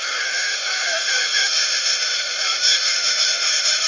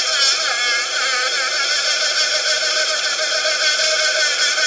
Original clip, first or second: second